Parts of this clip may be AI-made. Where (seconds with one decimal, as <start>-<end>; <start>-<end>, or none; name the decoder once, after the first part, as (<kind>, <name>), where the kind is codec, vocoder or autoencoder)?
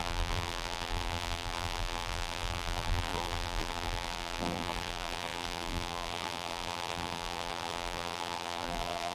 0.0-9.1 (vocoder, BigVGAN v2)